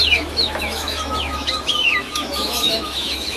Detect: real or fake fake